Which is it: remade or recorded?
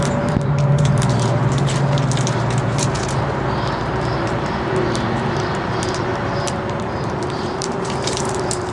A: remade